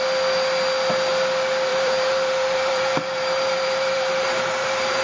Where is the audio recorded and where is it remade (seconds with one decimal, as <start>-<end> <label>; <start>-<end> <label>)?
0.0-1.7 recorded; 1.7-5.0 remade